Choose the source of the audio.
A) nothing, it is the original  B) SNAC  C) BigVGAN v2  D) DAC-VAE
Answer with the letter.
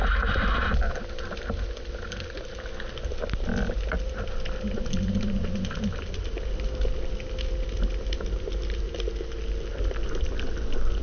A